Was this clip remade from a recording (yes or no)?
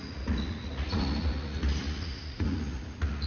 yes